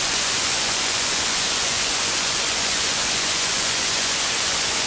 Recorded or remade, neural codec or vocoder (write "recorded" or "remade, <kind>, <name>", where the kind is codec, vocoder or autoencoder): remade, vocoder, Vocos